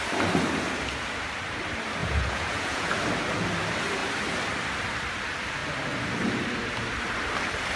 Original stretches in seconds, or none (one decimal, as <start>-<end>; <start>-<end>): 0.0-2.0; 2.9-7.8